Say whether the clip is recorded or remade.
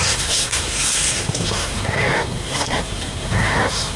remade